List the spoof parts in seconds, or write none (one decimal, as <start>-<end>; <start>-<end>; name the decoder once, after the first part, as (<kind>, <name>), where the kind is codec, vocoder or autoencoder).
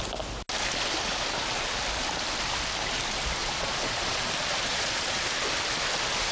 3.4-4.3 (vocoder, Vocos); 4.7-5.2